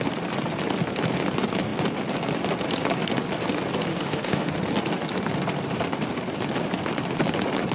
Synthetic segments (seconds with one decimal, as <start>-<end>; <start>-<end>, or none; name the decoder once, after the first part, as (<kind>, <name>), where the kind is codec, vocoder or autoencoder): 3.9-4.5 (autoencoder, DAC-VAE)